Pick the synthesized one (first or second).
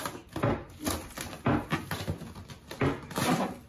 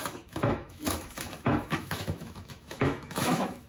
second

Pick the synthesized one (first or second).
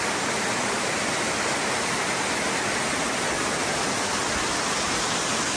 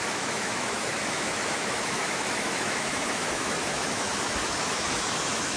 second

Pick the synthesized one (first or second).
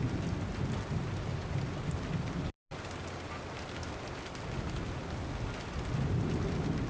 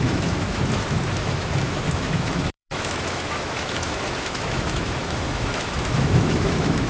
second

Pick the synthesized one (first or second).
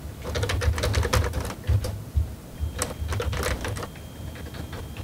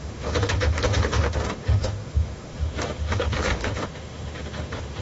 second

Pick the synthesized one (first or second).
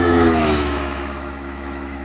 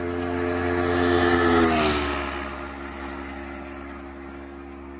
first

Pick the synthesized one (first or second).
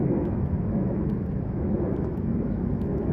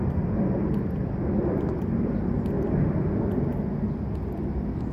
first